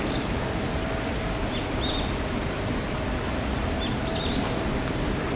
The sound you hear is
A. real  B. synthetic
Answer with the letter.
A